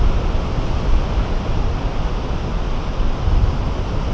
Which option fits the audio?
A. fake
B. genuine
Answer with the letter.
B